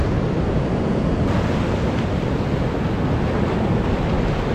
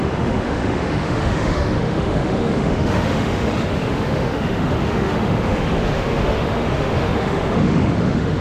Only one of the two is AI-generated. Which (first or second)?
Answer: second